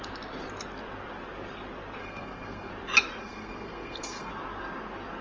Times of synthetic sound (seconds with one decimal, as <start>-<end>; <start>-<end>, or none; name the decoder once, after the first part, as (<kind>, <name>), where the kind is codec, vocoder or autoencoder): 2.0-2.7 (codec, SNAC); 3.2-4.3